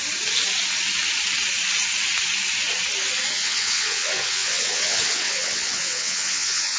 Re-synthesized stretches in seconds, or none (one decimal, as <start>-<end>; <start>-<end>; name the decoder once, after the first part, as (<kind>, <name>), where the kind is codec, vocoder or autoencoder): 3.3-6.8 (vocoder, WaveNeXt)